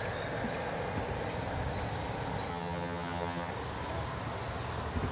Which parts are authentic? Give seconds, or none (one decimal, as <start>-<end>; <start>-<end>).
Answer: 0.0-2.5; 3.5-5.1